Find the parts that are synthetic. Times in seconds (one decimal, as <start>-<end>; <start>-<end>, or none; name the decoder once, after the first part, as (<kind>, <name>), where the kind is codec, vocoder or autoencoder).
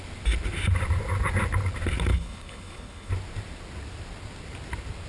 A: 2.1-3.1 (codec, HILCodec)